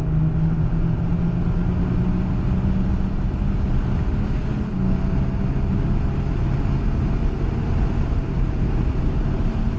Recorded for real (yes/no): yes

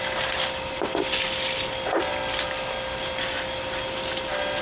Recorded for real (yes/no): yes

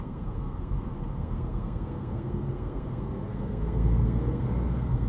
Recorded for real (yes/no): no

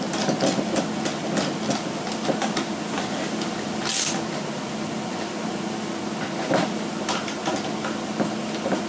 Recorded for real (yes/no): yes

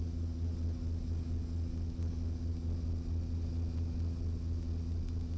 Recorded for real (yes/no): yes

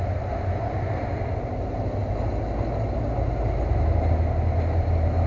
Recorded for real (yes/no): yes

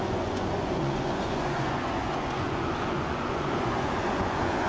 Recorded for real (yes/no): no